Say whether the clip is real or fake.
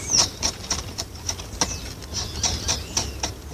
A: real